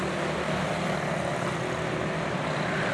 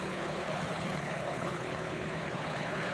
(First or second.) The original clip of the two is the first